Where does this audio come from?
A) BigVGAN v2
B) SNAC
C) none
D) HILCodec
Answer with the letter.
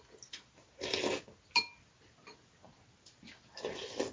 C